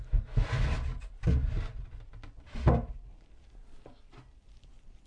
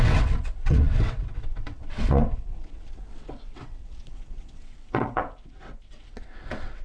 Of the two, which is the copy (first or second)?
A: second